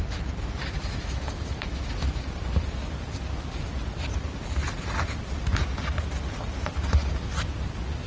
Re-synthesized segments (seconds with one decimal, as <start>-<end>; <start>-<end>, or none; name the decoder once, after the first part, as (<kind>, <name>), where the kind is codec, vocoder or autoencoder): 0.9-1.9 (autoencoder, DAC-VAE)